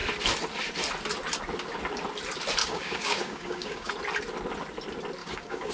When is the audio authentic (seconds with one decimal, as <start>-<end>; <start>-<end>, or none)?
0.0-2.6; 3.9-5.2